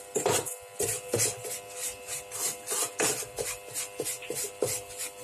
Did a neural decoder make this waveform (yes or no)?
no